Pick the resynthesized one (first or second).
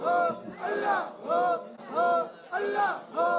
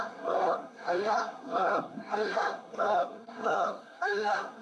second